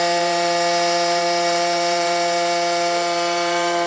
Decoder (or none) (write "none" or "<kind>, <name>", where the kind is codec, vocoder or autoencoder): vocoder, BigVGAN v2